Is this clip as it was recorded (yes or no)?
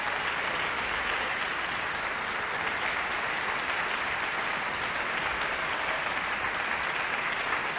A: yes